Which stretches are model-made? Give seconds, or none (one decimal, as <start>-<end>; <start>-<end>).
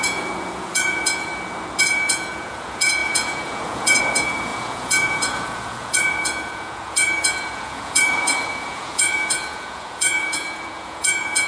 0.0-1.3; 1.8-11.5